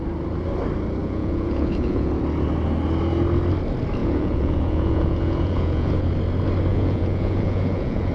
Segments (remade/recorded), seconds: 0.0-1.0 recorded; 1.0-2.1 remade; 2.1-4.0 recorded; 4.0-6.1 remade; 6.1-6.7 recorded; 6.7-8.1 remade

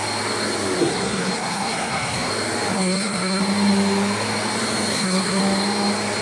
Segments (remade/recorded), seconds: 0.0-0.8 recorded; 0.8-2.3 remade; 2.3-2.7 recorded; 2.7-3.4 remade; 3.4-4.9 recorded; 4.9-5.4 remade; 5.4-6.2 recorded

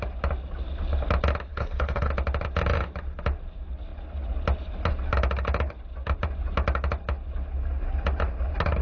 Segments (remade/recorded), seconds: 0.0-1.5 recorded; 1.5-2.1 remade; 2.1-8.8 recorded

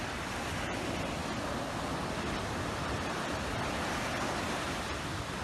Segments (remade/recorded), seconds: 0.0-5.4 recorded

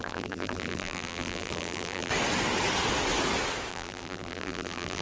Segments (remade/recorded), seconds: 0.0-2.1 remade; 2.1-3.7 recorded; 3.7-5.0 remade

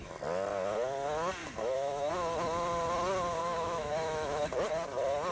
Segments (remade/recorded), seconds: 0.0-1.4 recorded; 1.4-2.1 remade; 2.1-3.4 recorded; 3.4-4.4 remade; 4.4-5.3 recorded